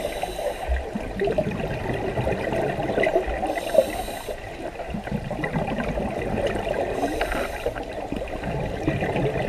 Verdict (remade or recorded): recorded